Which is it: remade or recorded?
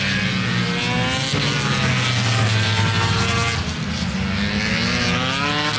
recorded